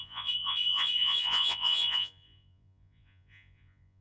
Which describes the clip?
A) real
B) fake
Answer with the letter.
B